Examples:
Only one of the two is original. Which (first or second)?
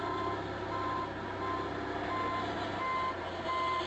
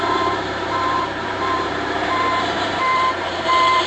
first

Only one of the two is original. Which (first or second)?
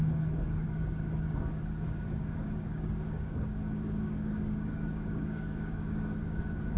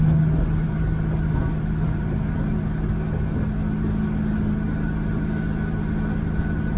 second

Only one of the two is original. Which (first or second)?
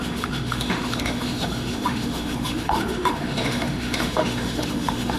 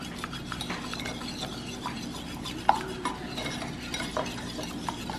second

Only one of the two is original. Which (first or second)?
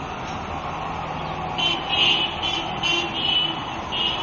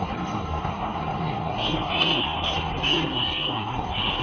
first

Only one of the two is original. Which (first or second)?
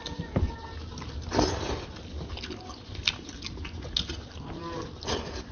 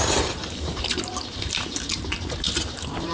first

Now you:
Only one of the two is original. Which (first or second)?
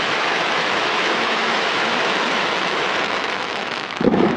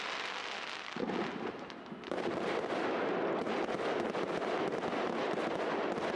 second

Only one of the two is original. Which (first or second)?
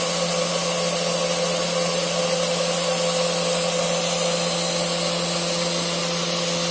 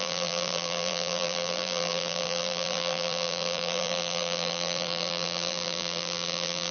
first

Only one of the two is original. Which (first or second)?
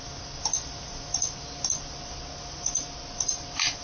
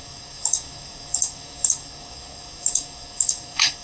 first